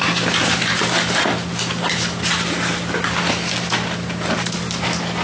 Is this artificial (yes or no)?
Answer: no